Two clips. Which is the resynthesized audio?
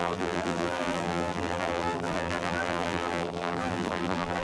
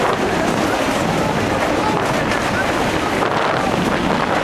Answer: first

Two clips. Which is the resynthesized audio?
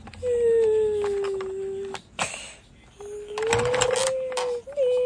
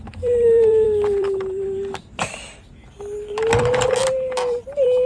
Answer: second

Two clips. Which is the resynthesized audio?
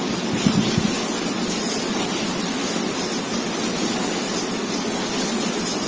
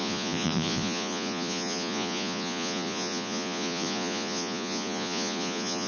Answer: second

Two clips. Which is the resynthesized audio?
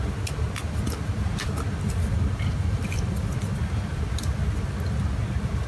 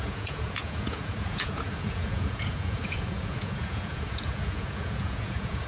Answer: second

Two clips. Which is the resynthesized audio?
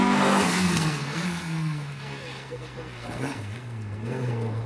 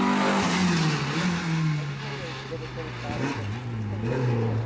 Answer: first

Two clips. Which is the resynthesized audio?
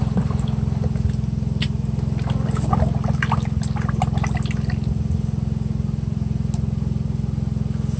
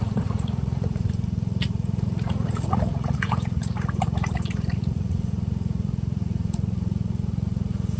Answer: second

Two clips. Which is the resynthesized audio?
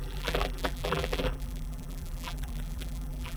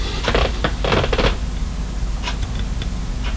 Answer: first